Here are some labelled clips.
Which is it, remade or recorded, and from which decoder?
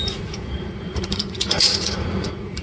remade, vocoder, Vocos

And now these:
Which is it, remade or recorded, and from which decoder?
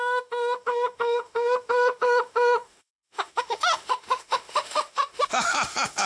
remade, autoencoder, DAC-VAE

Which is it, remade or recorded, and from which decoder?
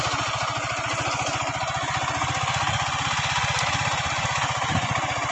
recorded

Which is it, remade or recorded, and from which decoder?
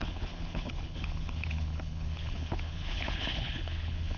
remade, codec, HILCodec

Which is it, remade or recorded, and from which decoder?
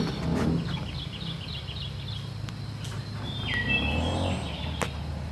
recorded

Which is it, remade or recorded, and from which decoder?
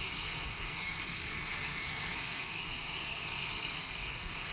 remade, codec, SNAC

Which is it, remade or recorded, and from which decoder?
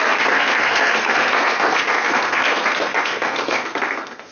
remade, codec, SNAC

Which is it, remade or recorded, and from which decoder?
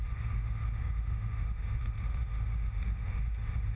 remade, autoencoder, DAC-VAE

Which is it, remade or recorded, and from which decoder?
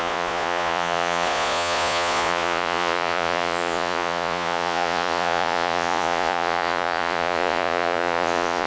remade, vocoder, Vocos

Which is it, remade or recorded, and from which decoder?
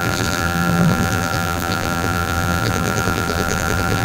remade, vocoder, BigVGAN v2